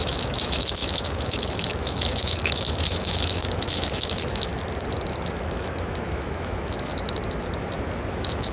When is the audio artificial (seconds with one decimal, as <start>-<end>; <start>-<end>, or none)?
0.0-4.5; 5.3-6.9; 8.1-8.5